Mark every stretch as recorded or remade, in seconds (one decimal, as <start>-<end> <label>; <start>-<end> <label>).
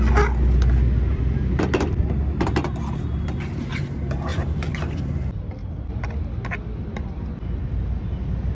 0.0-1.1 recorded; 1.1-1.7 remade; 1.7-4.3 recorded; 4.3-5.7 remade; 5.7-8.5 recorded